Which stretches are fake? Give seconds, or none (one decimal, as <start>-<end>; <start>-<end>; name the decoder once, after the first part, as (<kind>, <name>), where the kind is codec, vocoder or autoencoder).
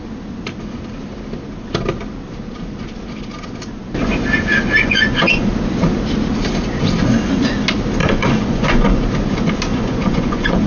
4.8-5.5 (vocoder, Vocos); 8.0-9.0; 9.7-10.7